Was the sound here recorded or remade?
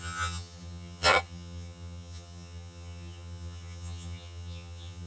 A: remade